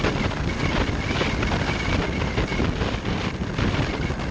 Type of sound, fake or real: real